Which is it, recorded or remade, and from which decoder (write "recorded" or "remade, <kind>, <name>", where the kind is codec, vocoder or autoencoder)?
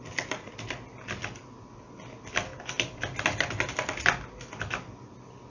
recorded